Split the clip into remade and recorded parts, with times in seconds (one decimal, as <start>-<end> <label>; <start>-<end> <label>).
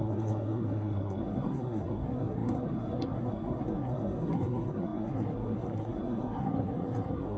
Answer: 0.0-7.4 remade